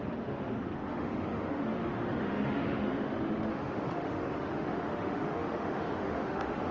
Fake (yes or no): yes